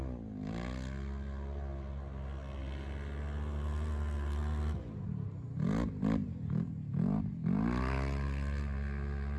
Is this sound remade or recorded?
recorded